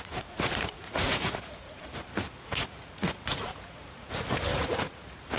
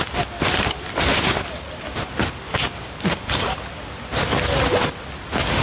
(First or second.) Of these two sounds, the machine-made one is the first